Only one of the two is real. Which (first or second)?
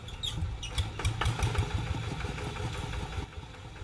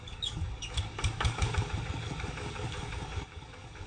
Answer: first